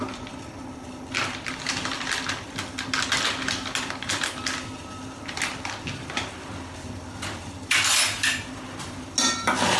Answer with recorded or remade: recorded